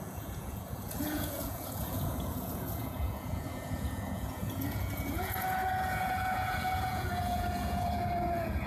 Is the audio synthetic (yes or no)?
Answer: yes